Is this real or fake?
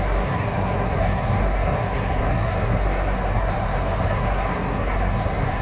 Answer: fake